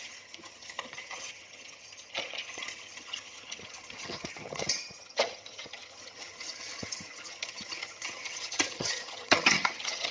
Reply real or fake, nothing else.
fake